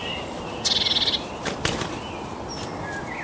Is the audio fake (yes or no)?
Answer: no